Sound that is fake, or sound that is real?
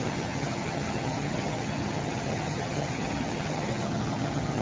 fake